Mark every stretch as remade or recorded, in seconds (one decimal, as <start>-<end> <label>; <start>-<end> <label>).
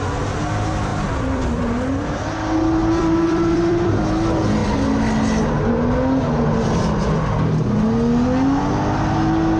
0.0-0.9 recorded; 0.9-1.7 remade; 1.7-2.8 recorded; 2.8-3.9 remade; 3.9-9.6 recorded